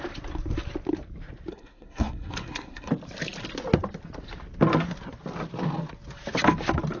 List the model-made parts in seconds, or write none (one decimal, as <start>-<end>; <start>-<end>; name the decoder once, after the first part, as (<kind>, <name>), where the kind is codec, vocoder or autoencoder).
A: 1.5-2.9 (codec, SNAC)